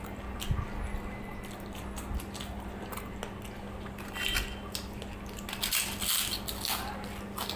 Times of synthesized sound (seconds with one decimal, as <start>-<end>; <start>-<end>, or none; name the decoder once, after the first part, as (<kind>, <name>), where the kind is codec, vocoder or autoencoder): none